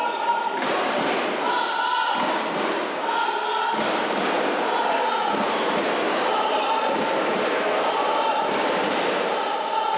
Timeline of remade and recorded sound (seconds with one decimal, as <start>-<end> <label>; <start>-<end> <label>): 0.0-1.0 remade; 1.0-10.0 recorded